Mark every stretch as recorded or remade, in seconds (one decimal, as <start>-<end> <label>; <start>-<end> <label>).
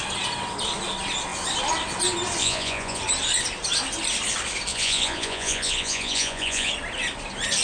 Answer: 0.0-2.4 recorded; 2.4-3.0 remade; 3.0-4.7 recorded; 4.7-6.7 remade; 6.7-7.6 recorded